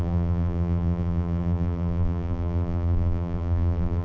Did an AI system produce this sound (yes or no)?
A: yes